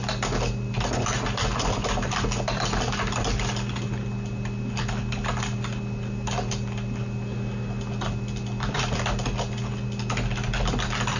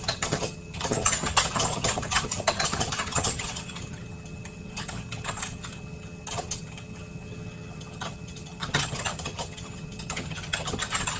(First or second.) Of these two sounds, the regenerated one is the second